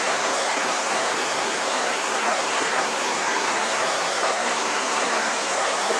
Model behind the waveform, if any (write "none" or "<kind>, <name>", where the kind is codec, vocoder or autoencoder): codec, SNAC